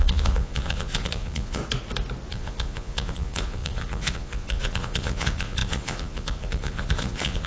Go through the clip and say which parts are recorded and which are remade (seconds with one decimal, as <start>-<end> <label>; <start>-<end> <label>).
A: 0.0-1.6 remade; 1.6-2.3 recorded; 2.3-7.5 remade